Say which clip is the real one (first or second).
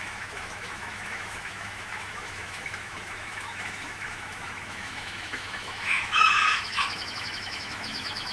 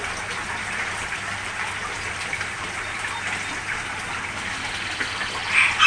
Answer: second